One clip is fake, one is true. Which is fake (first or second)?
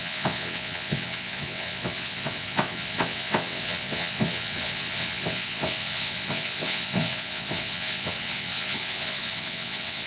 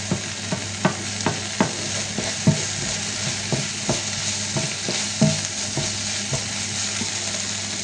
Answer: first